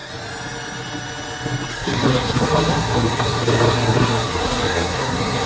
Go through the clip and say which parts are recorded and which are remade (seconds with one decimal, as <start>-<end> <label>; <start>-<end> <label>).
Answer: 0.0-1.7 recorded; 1.7-5.5 remade